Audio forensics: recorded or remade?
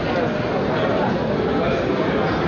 recorded